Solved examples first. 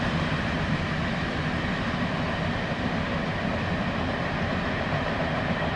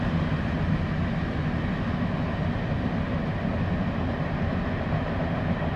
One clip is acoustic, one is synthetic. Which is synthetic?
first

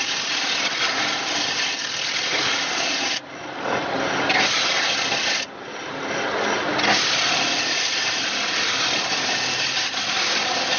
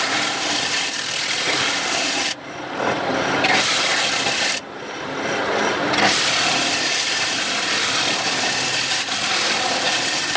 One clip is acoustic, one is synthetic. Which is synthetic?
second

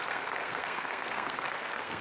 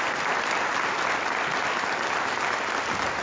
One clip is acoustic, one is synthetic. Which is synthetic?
first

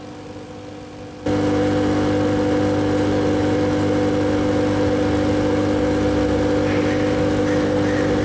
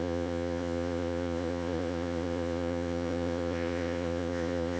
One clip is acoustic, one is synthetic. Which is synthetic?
second